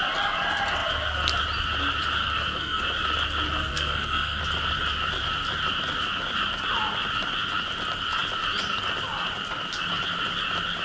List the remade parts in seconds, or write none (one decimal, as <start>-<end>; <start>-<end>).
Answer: 2.2-2.8; 3.7-4.4